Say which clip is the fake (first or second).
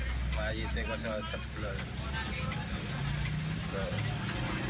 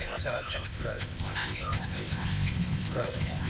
second